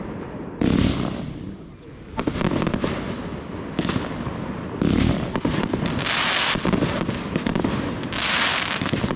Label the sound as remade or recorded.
recorded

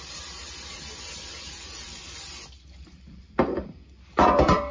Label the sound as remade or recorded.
remade